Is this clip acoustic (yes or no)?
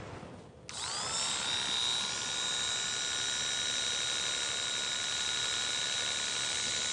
yes